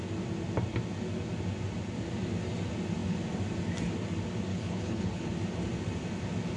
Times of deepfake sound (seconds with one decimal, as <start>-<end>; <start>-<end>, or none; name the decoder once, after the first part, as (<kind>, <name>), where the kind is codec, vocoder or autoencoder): 4.5-5.3 (codec, HILCodec)

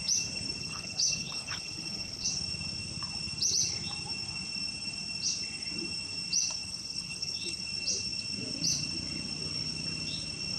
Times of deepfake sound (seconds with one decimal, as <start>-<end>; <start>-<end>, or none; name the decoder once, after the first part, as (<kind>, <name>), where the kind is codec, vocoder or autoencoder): 0.6-2.3 (codec, HILCodec); 6.6-7.6

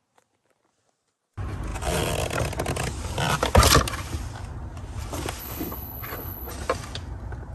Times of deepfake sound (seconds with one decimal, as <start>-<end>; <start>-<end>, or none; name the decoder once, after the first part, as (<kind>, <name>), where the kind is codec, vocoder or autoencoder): 5.4-6.5 (codec, HILCodec)

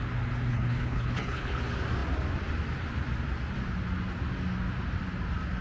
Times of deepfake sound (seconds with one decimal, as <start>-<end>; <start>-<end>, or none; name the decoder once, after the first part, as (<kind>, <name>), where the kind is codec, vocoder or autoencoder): 0.5-1.6 (codec, HILCodec)

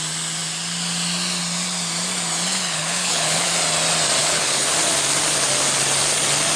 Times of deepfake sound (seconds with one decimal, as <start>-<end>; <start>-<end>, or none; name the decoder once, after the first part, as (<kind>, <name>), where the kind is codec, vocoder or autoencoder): 2.5-3.5 (codec, HILCodec); 4.2-4.7

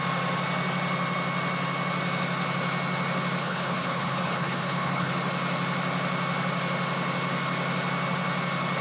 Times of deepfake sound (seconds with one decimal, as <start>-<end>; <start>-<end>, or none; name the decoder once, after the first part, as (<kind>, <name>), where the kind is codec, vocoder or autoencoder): 3.4-5.1 (codec, HILCodec)

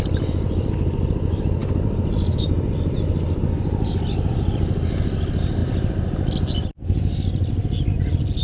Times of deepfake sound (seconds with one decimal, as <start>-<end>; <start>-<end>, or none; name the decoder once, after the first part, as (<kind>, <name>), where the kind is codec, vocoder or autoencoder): none

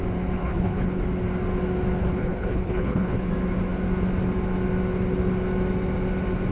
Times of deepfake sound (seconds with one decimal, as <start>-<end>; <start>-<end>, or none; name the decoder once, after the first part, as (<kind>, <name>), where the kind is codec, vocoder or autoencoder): 0.4-1.0 (codec, HILCodec); 2.0-3.3